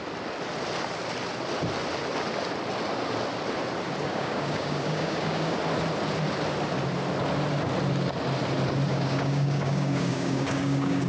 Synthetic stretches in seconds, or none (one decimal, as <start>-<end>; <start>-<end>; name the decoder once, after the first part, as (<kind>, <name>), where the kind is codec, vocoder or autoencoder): 4.1-5.6 (codec, DAC); 8.9-11.1